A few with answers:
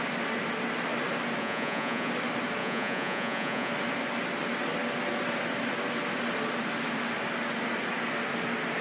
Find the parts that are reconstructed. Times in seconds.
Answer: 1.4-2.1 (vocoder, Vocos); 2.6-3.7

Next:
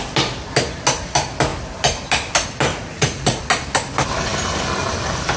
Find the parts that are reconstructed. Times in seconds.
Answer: 2.7-3.4 (vocoder, Vocos)

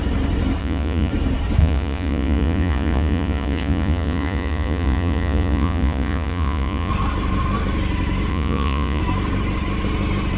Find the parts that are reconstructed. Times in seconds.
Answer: 0.6-1.1 (vocoder, Vocos); 1.6-6.9; 8.3-9.0